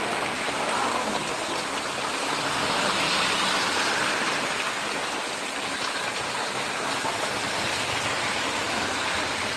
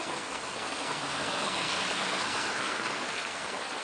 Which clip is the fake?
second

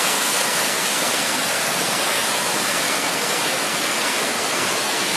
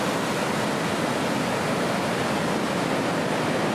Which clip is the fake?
first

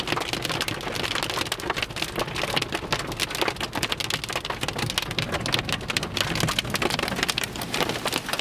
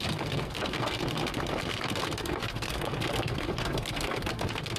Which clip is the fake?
second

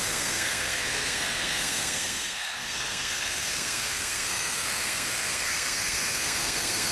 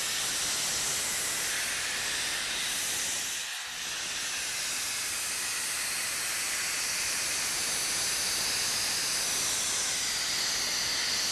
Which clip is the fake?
first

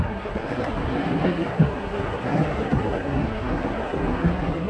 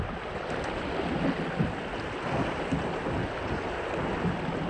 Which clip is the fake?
first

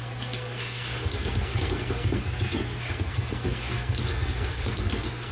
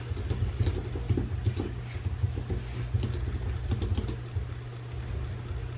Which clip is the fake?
first